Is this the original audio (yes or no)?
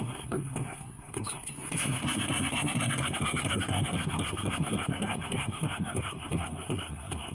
no